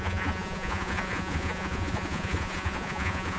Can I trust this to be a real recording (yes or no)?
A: no